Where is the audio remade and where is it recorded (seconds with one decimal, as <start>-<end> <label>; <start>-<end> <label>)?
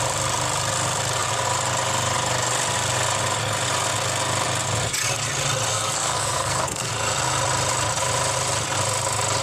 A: 0.0-5.7 recorded; 5.7-6.9 remade; 6.9-9.4 recorded